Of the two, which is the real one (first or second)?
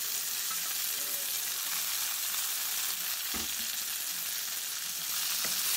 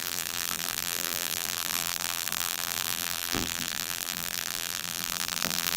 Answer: first